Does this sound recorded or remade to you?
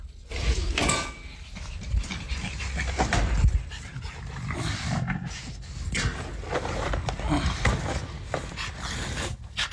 recorded